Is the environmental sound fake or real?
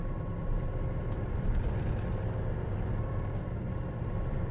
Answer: real